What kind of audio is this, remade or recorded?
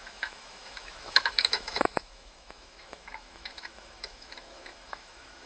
remade